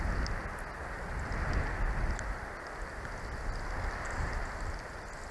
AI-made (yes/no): no